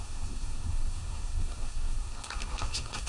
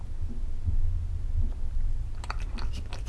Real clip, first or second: second